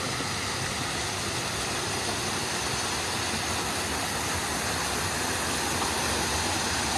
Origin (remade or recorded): recorded